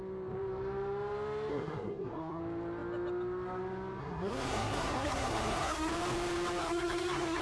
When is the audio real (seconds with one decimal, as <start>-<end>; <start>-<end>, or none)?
0.0-1.5; 2.4-4.0; 5.9-6.6